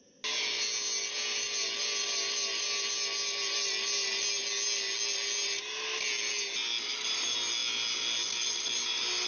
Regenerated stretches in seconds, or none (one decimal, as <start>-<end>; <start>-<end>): none